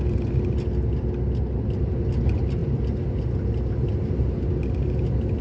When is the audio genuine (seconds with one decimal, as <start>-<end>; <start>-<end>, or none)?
0.0-5.4